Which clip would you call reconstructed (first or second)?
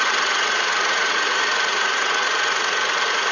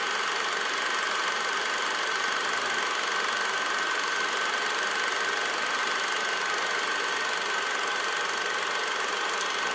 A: first